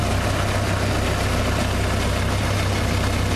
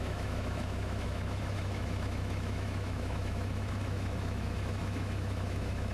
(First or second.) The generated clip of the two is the second